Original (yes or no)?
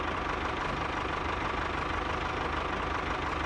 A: yes